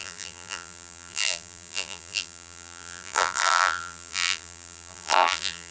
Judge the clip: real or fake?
fake